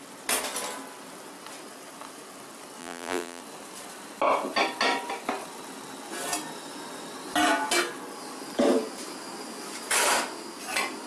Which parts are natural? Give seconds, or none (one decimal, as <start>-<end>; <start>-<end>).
0.0-2.8; 3.4-11.1